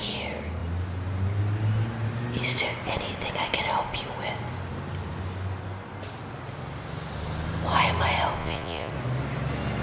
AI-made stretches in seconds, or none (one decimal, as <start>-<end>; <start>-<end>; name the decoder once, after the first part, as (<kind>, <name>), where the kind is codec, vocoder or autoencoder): 8.4-8.9 (vocoder, Vocos)